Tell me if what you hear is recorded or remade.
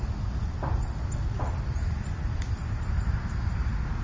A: recorded